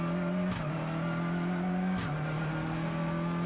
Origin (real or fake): real